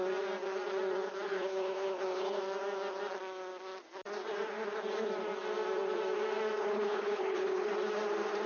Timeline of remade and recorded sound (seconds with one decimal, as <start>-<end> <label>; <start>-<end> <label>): 0.0-1.3 recorded; 1.3-2.4 remade; 2.4-6.6 recorded; 6.6-7.7 remade; 7.7-8.5 recorded